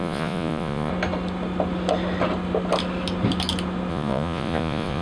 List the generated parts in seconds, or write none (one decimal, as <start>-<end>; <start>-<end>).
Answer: 0.0-0.9; 3.9-5.0